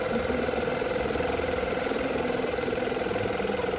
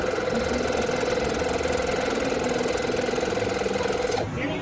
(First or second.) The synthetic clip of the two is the first